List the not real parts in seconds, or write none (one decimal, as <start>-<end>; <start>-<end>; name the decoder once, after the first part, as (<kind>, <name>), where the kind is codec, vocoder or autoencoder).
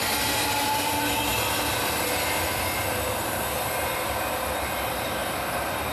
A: none